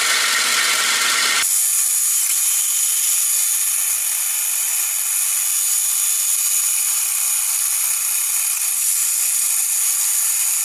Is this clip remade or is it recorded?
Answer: recorded